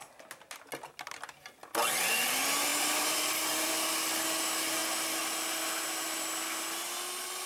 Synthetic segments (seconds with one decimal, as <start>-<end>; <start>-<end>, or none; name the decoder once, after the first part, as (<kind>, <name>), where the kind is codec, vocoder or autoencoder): 2.7-3.7 (vocoder, BigVGAN v2)